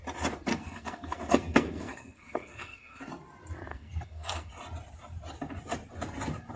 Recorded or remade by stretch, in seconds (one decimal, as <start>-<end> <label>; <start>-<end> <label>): 0.0-0.5 recorded; 0.5-3.1 remade; 3.1-3.7 recorded; 3.7-4.5 remade; 4.5-6.6 recorded